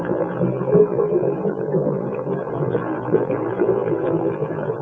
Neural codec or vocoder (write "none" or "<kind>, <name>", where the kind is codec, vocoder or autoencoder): vocoder, BigVGAN v2